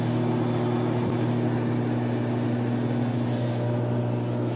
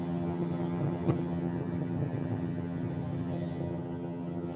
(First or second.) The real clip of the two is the first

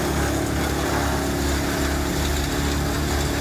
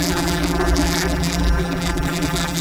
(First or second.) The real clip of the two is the first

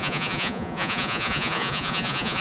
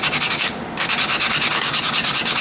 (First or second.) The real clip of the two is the second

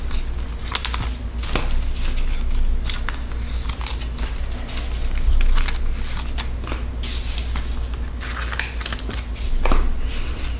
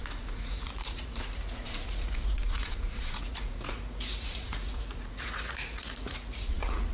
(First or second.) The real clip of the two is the first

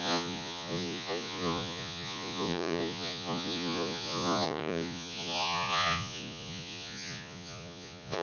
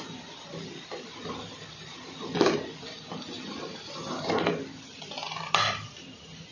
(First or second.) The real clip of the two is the second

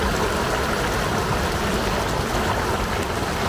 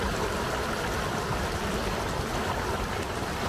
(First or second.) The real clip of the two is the first